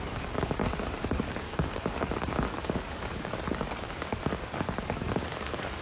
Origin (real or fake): fake